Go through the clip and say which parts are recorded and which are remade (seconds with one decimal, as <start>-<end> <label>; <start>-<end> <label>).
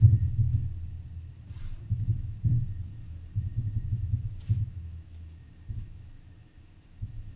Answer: 0.0-0.5 remade; 0.5-1.8 recorded; 1.8-7.4 remade